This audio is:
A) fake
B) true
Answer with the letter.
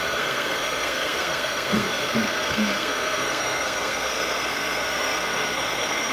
A